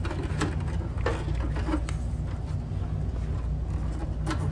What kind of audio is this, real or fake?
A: real